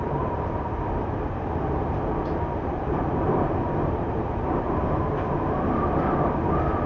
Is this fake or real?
fake